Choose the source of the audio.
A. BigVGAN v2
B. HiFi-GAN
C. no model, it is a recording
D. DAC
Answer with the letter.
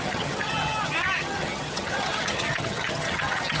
B